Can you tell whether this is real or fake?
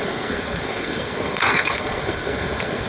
fake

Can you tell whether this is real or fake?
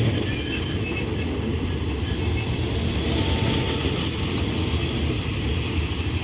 real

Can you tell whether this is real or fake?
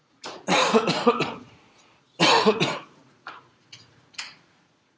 fake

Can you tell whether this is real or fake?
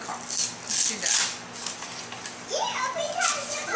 real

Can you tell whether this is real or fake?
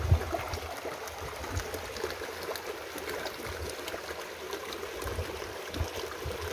real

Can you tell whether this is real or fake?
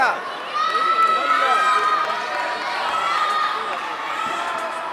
real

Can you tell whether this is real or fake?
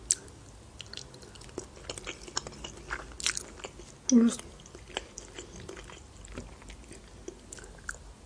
real